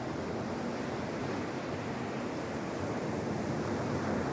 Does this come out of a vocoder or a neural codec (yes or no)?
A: no